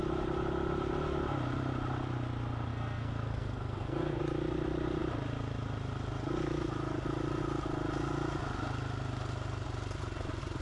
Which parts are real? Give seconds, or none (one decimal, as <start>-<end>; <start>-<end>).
0.0-2.7; 4.2-10.6